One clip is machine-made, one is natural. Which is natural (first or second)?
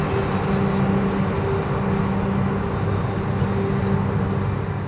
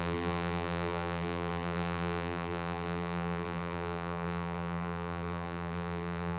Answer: first